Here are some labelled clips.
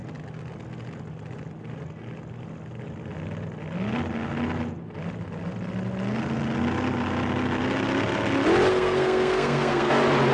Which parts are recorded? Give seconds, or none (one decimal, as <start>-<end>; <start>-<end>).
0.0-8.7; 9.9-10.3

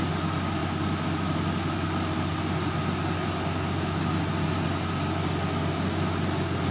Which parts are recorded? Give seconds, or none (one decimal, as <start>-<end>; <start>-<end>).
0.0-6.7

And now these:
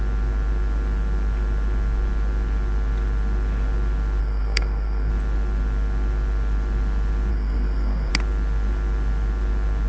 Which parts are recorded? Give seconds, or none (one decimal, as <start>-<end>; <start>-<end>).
0.0-4.2; 5.1-7.3; 8.1-9.9